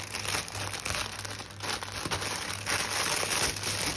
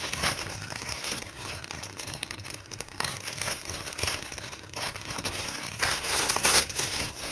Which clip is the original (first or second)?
first